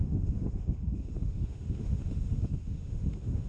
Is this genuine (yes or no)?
no